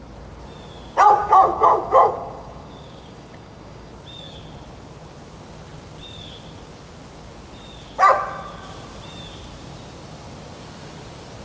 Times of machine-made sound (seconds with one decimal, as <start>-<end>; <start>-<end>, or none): 1.2-3.9